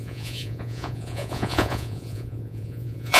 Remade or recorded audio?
remade